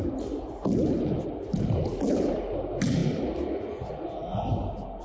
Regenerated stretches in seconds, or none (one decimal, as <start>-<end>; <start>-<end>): none